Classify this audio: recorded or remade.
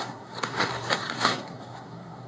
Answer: remade